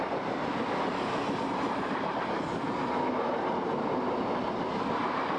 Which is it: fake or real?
real